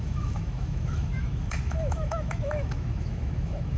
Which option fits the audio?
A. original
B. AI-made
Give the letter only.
B